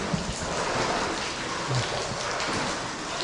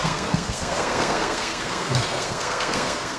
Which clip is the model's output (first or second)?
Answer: second